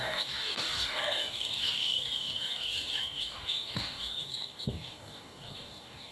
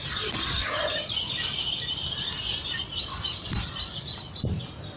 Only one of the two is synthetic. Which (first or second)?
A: first